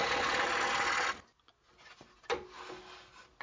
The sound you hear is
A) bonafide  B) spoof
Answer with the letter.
A